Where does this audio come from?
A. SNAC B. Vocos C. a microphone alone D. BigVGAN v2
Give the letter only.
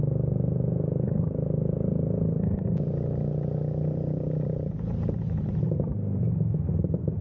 C